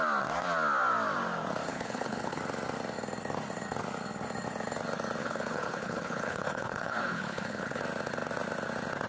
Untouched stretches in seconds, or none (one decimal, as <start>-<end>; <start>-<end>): 0.0-1.7; 2.4-5.2; 7.8-9.1